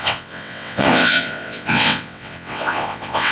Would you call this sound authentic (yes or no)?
no